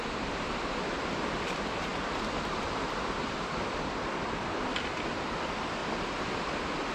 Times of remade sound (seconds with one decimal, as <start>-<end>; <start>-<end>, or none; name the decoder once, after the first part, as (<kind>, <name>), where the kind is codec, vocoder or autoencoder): 0.0-1.9 (vocoder, BigVGAN v2); 2.5-5.8; 6.4-6.9